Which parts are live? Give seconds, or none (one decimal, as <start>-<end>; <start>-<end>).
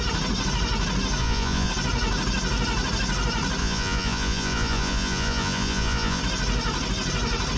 0.0-1.2; 1.7-3.6; 6.2-7.6